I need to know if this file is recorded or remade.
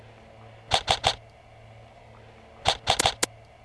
recorded